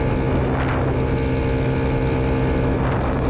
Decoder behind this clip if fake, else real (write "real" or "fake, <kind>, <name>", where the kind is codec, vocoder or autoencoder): real